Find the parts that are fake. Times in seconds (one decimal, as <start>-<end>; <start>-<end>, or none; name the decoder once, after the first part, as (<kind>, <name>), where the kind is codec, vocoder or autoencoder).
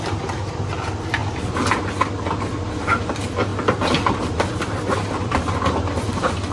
0.0-1.2 (vocoder, BigVGAN v2); 2.5-3.5; 4.2-6.5